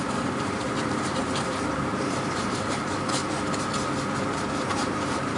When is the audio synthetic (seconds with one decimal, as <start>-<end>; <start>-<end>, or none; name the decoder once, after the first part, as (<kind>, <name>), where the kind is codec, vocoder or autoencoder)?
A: 0.0-3.2 (vocoder, BigVGAN v2); 4.5-5.4